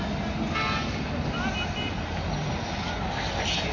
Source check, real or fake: real